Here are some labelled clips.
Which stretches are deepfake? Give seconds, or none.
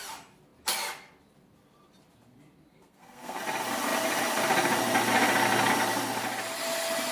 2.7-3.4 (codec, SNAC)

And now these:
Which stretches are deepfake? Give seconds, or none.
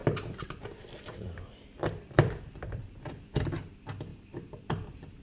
0.0-3.1 (vocoder, BigVGAN v2); 4.1-5.2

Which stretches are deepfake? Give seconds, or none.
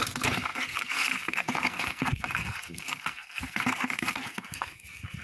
0.0-5.2 (codec, SNAC)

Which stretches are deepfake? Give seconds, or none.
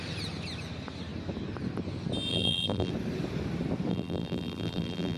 2.3-2.9 (vocoder, BigVGAN v2); 3.9-5.2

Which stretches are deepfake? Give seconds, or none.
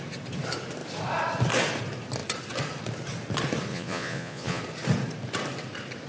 3.7-4.6 (vocoder, Vocos)